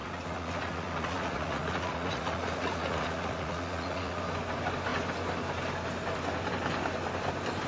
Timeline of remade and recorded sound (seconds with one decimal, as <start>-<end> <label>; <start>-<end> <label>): 0.0-4.2 remade; 4.2-7.7 recorded